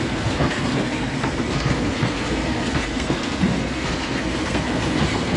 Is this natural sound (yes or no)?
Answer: no